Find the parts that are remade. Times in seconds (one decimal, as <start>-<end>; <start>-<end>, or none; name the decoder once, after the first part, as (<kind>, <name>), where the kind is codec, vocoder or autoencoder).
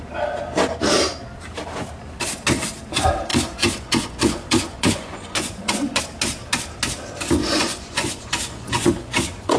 3.3-6.0 (vocoder, Vocos); 7.4-9.6